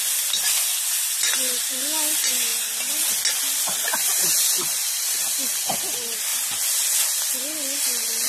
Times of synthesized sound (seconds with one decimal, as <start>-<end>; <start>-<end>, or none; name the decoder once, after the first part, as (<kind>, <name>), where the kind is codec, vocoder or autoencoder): none